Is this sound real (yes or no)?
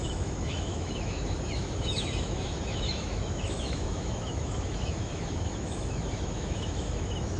no